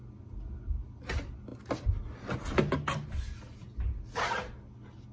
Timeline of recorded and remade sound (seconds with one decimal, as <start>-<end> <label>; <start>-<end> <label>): 0.0-5.1 recorded

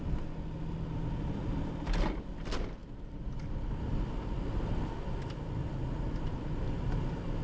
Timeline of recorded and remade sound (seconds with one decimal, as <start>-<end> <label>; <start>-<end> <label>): 0.0-2.8 recorded; 2.8-3.7 remade; 3.7-7.4 recorded

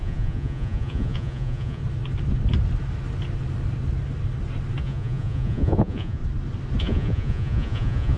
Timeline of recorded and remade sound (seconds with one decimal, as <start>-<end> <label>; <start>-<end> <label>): 0.0-1.8 remade; 1.8-4.8 recorded; 4.8-6.2 remade; 6.2-6.8 recorded; 6.8-8.2 remade

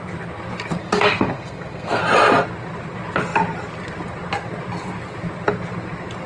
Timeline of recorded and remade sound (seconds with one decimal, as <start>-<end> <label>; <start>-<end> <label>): 0.0-0.8 recorded; 0.8-2.0 remade; 2.0-6.3 recorded